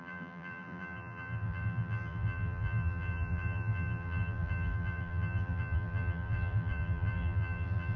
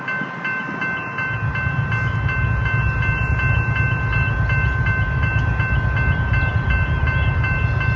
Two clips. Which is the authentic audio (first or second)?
second